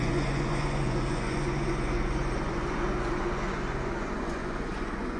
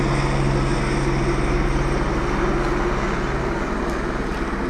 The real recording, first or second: second